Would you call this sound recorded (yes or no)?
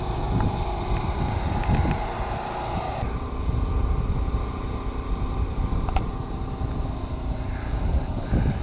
yes